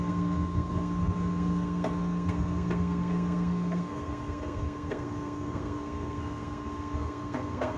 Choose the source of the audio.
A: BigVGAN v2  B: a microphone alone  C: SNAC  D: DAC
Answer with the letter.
C